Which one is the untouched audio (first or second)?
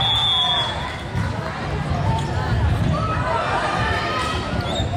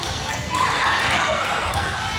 first